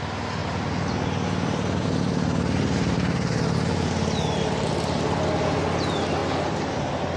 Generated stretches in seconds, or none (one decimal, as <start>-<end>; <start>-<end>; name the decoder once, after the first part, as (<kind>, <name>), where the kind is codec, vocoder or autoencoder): 0.4-4.7 (vocoder, BigVGAN v2)